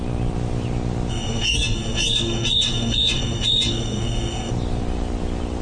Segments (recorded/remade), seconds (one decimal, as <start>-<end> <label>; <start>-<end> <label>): 0.0-1.1 recorded; 1.1-4.5 remade; 4.5-5.6 recorded